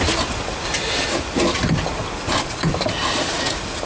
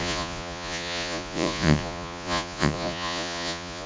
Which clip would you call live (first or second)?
first